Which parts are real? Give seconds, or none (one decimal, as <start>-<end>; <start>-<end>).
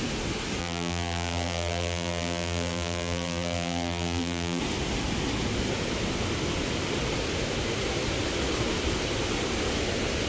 0.0-0.6; 4.6-10.3